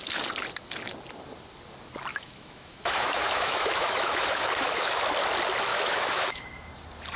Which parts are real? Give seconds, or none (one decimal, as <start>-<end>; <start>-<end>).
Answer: 0.0-2.1; 5.0-5.7; 6.7-7.2